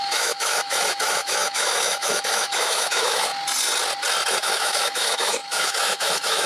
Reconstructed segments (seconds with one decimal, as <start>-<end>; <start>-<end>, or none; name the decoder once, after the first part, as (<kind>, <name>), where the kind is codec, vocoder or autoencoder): 0.0-3.3 (autoencoder, DAC-VAE); 4.3-6.5